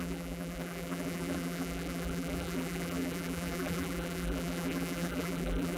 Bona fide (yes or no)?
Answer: no